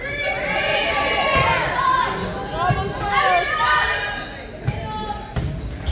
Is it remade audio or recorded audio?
recorded